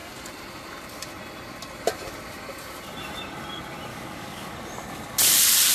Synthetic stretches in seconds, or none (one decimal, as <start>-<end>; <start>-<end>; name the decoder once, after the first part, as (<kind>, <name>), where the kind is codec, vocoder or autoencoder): 3.9-4.6 (codec, DAC)